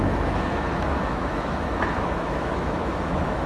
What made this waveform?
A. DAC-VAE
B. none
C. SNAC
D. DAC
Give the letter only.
A